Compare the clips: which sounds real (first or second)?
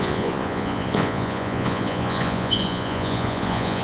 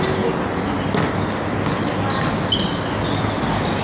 second